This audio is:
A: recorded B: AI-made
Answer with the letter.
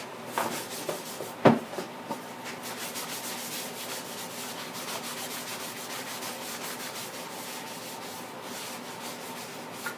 A